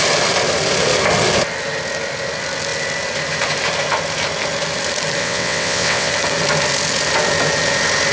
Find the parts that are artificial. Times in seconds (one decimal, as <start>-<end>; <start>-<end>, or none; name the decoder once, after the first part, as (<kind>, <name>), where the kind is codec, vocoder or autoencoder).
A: 5.2-6.1 (vocoder, WaveNeXt)